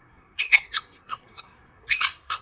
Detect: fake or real fake